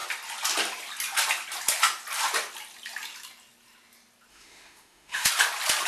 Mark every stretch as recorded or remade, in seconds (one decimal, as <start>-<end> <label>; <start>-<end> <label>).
0.0-4.3 recorded; 4.3-5.3 remade; 5.3-5.9 recorded